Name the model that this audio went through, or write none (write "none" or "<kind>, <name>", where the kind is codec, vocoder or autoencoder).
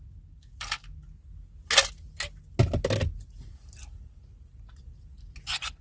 none